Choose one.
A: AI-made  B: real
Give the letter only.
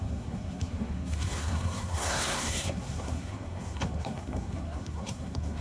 A